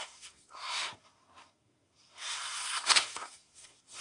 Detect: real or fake fake